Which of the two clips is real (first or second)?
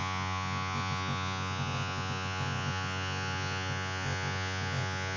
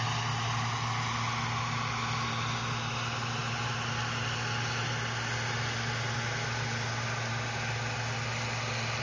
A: second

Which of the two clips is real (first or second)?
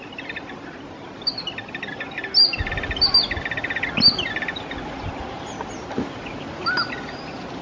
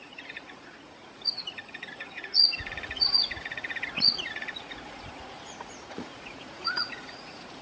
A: first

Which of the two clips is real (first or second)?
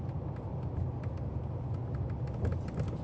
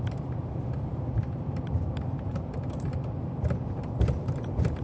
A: first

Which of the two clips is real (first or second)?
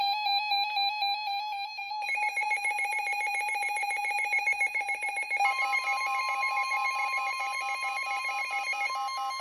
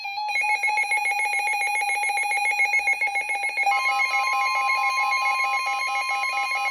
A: second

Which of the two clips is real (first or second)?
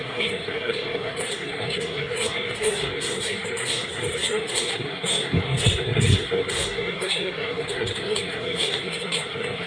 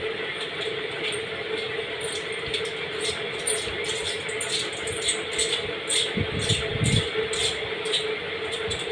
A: second